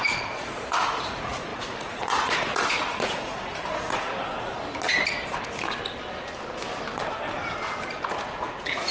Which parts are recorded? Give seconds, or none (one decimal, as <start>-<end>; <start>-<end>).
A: 4.1-8.1